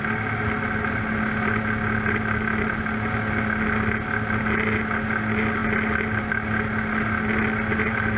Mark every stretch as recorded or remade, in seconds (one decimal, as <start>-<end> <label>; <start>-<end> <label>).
0.0-8.2 recorded